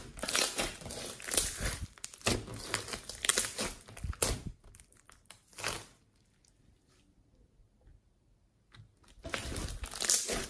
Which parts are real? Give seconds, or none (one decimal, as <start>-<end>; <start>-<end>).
0.0-10.5

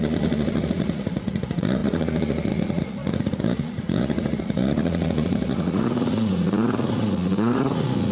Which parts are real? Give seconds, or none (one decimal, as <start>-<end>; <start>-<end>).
none

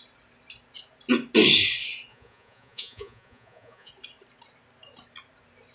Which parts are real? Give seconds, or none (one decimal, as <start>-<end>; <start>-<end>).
0.0-2.1; 3.9-5.7

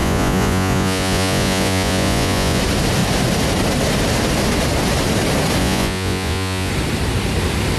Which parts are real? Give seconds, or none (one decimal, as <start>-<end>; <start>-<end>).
2.6-5.6; 6.7-7.8

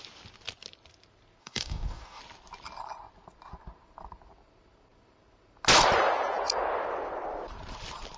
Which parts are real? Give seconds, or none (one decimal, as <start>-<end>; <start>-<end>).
0.0-1.4; 2.2-8.2